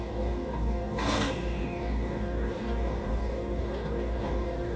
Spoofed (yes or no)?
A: yes